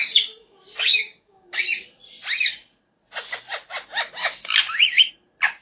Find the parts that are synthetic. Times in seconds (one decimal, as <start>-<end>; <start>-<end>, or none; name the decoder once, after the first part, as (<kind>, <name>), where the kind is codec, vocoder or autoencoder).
0.0-0.6 (codec, DAC); 1.0-1.6; 4.2-5.1